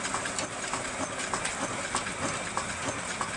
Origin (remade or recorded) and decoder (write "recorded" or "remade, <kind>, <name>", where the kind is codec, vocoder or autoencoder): recorded